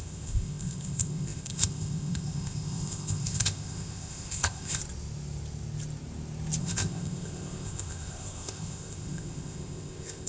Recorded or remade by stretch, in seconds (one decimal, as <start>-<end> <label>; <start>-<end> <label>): 0.0-4.8 remade; 4.8-6.6 recorded; 6.6-10.3 remade